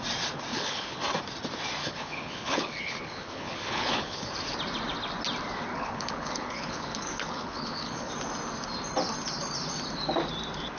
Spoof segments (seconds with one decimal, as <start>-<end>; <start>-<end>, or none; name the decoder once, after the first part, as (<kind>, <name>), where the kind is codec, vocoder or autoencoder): 0.5-1.0 (codec, HILCodec); 1.8-4.3; 5.7-8.1